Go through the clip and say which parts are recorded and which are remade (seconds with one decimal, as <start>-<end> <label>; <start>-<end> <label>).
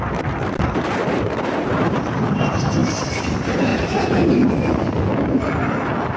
0.0-2.8 remade; 2.8-3.3 recorded; 3.3-3.7 remade; 3.7-6.2 recorded